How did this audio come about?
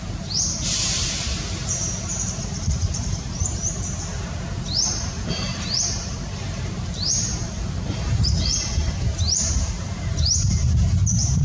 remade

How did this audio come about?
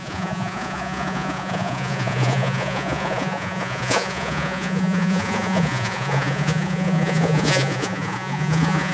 remade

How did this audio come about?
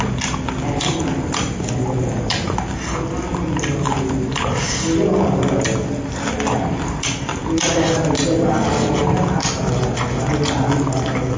recorded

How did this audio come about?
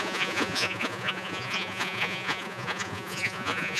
remade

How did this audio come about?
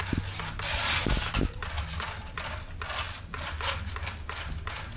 recorded